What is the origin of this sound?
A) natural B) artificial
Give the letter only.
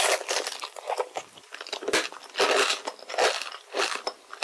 A